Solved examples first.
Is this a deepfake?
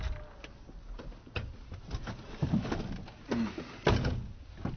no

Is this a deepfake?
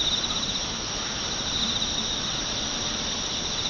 no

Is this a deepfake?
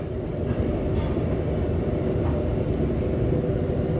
no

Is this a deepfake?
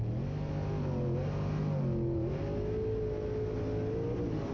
no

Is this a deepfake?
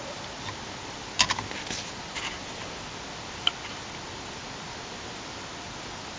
no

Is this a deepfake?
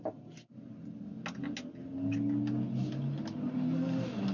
no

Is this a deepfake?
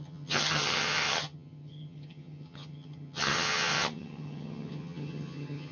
yes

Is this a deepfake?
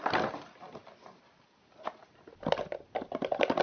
no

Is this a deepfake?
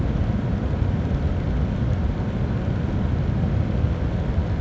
no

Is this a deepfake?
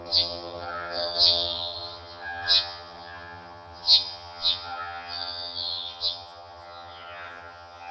yes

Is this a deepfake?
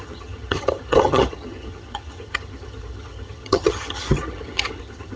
yes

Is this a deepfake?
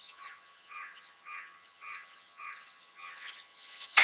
yes